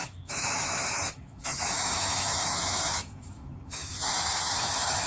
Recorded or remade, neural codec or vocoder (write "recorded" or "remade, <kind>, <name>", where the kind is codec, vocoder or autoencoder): remade, autoencoder, DAC-VAE